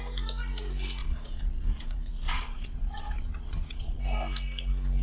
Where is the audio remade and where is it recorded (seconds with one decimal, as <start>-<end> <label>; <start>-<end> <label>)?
0.0-1.0 recorded; 1.0-4.0 remade; 4.0-5.0 recorded